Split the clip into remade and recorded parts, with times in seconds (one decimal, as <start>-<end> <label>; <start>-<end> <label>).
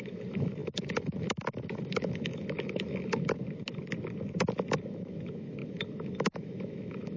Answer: 0.0-3.4 remade; 3.4-4.8 recorded; 4.8-7.2 remade